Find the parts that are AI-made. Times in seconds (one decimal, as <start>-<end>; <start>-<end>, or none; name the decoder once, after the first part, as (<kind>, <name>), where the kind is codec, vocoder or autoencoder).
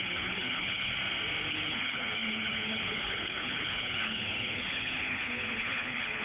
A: 0.0-0.9 (codec, HILCodec); 1.5-6.2